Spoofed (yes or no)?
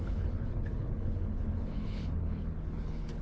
yes